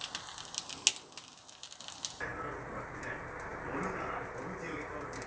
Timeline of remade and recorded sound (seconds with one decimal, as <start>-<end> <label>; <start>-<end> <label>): 0.0-5.3 recorded